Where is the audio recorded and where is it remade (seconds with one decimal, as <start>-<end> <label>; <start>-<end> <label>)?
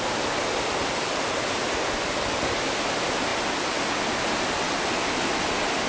0.0-5.9 recorded